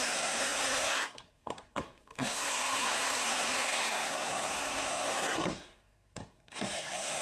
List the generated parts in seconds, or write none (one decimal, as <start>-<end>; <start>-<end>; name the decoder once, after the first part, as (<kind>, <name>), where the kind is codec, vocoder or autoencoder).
0.0-7.2 (codec, SNAC)